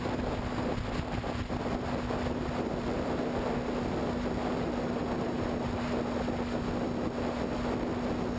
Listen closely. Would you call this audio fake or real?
real